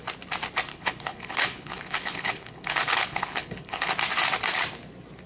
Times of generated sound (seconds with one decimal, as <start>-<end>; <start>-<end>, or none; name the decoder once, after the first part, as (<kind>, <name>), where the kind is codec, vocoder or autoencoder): 0.7-3.9 (codec, HILCodec)